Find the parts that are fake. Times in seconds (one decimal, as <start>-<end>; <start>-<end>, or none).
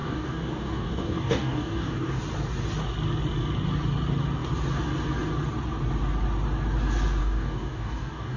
0.0-2.2; 7.2-8.4